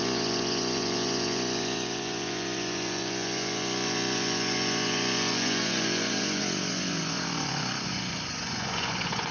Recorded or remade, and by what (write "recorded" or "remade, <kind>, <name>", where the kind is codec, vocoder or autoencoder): remade, vocoder, Vocos